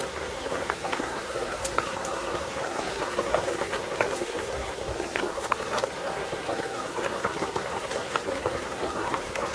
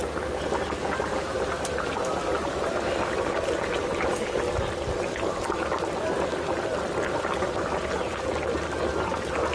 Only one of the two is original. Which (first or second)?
second